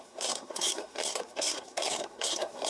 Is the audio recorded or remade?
remade